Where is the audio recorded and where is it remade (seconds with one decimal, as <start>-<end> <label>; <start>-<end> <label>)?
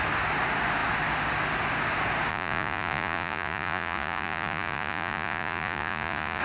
0.0-2.3 recorded; 2.3-6.4 remade